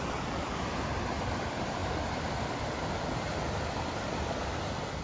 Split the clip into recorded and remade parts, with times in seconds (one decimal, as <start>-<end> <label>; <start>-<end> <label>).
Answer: 0.0-5.0 remade